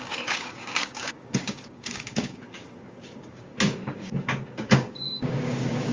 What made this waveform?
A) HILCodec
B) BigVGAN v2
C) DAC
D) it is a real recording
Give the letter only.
C